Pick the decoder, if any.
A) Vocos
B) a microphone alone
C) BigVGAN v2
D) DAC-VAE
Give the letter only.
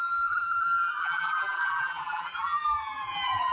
C